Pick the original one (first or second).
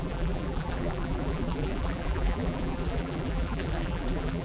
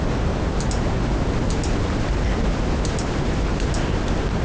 second